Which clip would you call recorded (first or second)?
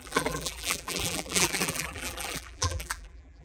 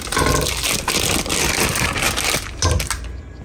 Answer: second